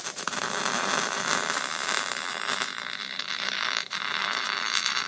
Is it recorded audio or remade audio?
remade